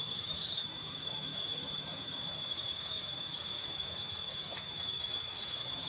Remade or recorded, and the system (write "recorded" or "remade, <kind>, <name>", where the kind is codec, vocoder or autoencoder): remade, autoencoder, DAC-VAE